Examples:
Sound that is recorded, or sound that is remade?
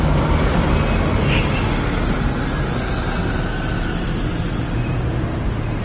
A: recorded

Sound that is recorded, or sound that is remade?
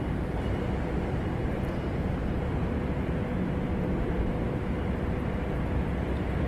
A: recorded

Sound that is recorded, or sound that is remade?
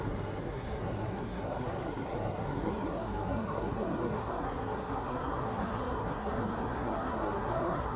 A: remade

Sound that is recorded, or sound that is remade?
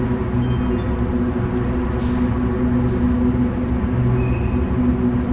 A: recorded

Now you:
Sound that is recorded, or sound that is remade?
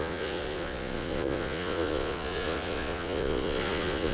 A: remade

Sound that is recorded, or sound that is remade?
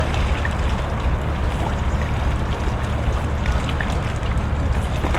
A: recorded